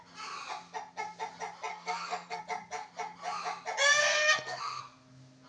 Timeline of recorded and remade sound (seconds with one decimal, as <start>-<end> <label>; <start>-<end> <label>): 0.0-1.7 recorded; 1.7-2.4 remade; 2.4-4.1 recorded; 4.1-4.8 remade; 4.8-5.5 recorded